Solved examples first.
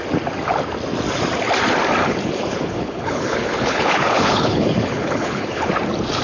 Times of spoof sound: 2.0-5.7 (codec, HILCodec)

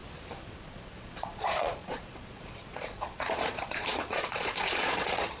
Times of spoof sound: 0.5-5.4 (vocoder, Vocos)

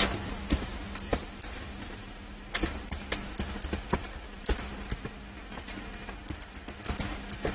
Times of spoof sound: none

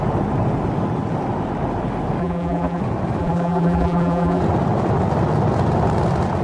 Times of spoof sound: 2.2-2.8 (vocoder, BigVGAN v2); 3.2-4.4

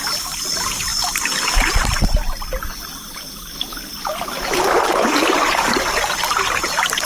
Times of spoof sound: none

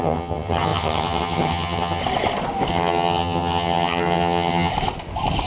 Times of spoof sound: 0.0-2.0 (vocoder, HiFi-GAN); 2.7-4.7